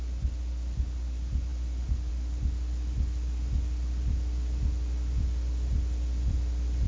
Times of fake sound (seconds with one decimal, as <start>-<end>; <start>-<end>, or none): none